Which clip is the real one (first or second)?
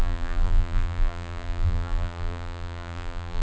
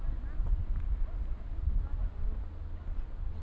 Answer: second